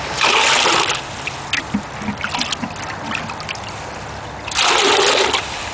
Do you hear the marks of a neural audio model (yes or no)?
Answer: no